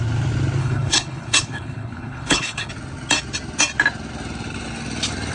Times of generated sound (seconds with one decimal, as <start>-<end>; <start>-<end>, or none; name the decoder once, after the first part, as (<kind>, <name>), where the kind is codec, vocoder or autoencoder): 0.6-2.7 (codec, HILCodec)